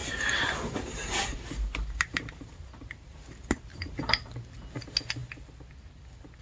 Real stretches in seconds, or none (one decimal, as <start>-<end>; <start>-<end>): 3.8-6.4